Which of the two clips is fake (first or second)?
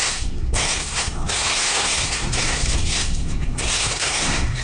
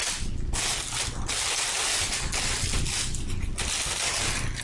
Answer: first